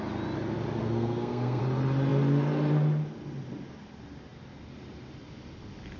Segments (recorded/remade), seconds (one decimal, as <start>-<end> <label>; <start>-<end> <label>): 0.0-0.8 recorded; 0.8-1.6 remade; 1.6-6.0 recorded

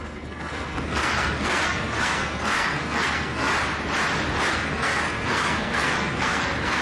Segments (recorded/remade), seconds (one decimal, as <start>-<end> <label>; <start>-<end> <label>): 0.0-3.5 remade; 3.5-4.5 recorded; 4.5-6.8 remade